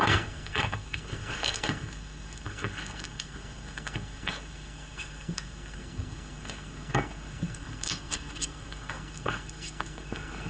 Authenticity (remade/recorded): remade